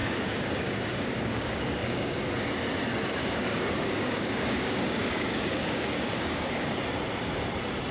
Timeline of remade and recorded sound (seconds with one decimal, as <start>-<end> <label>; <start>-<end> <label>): 0.0-2.3 remade; 2.3-3.2 recorded; 3.2-6.8 remade; 6.8-7.9 recorded

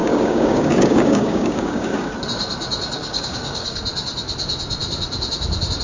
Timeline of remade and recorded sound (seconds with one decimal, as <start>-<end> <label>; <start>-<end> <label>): 0.0-2.1 remade; 2.1-3.0 recorded; 3.0-3.8 remade; 3.8-5.8 recorded

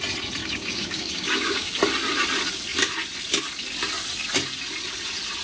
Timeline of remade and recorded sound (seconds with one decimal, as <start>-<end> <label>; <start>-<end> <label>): 0.0-0.4 recorded; 0.4-1.8 remade; 1.8-5.4 recorded

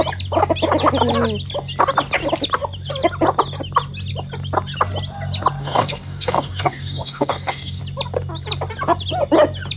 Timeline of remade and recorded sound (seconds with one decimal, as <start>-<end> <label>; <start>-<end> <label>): 0.0-5.6 recorded; 5.6-7.8 remade; 7.8-9.8 recorded

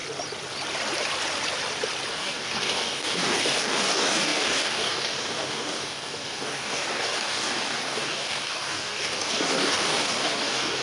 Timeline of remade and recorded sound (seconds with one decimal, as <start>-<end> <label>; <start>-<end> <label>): 0.0-2.1 recorded; 2.1-10.8 remade